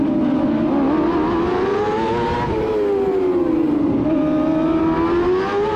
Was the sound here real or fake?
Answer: real